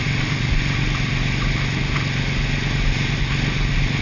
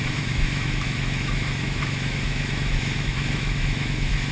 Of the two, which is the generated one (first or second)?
second